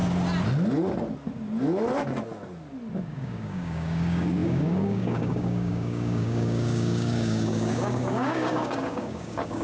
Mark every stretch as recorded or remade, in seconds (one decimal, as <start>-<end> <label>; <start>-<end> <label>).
0.0-3.0 recorded; 3.0-9.6 remade